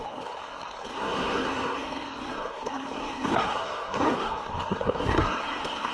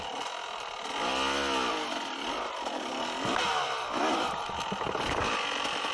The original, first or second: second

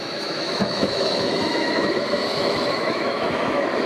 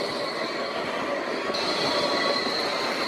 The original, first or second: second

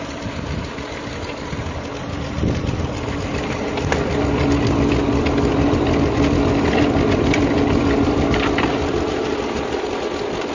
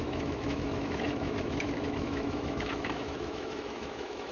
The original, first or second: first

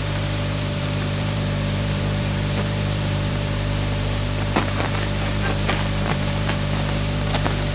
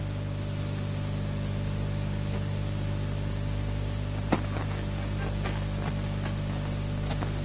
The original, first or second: second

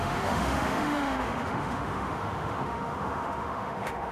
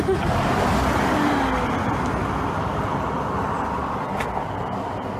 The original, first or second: second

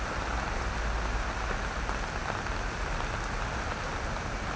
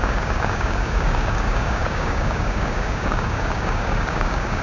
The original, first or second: first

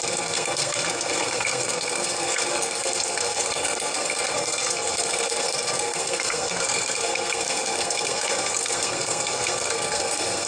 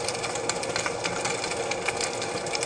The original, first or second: second